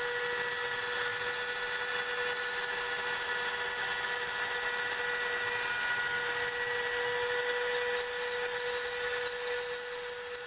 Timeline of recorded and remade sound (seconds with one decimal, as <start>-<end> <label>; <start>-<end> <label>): 0.0-10.5 recorded